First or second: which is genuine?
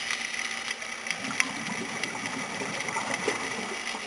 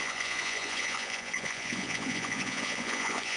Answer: first